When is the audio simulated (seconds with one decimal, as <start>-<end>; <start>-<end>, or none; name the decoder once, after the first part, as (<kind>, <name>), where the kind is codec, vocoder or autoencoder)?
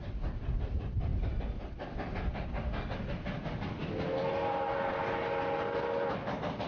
none